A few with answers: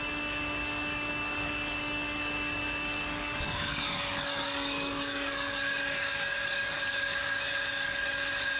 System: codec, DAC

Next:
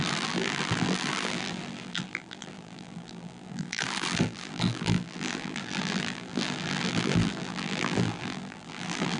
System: vocoder, BigVGAN v2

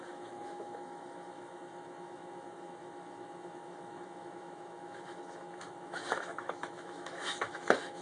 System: autoencoder, DAC-VAE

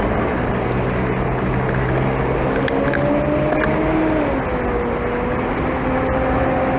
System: none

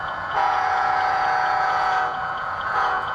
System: vocoder, Vocos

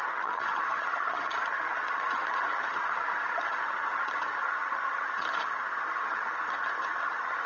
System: vocoder, HiFi-GAN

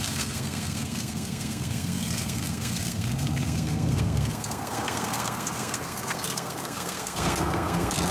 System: codec, SNAC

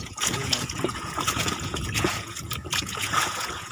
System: vocoder, Vocos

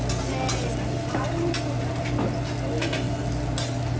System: none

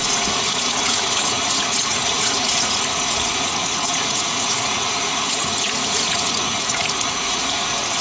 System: vocoder, Vocos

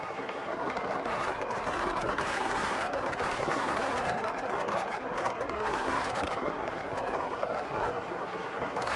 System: codec, SNAC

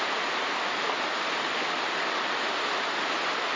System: vocoder, BigVGAN v2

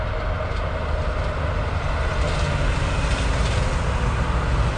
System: none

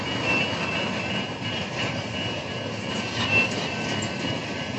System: none